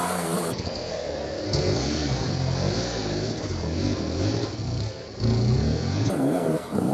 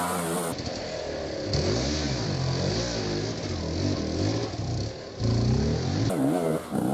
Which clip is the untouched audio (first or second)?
second